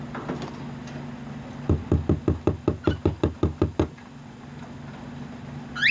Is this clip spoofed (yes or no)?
no